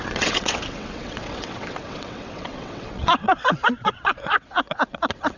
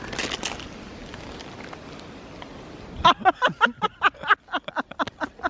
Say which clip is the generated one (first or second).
first